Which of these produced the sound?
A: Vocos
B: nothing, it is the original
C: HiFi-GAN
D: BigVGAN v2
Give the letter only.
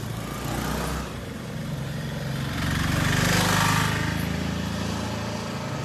B